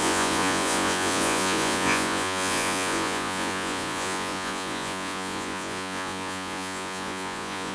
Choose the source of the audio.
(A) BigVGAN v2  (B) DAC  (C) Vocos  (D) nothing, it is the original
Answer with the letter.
C